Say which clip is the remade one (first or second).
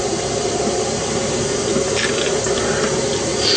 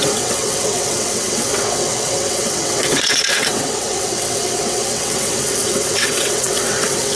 second